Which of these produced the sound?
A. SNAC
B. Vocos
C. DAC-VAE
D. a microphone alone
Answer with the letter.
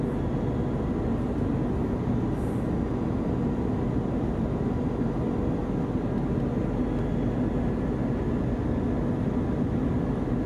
D